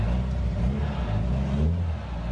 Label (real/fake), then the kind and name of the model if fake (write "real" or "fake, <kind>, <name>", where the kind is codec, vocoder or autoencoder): real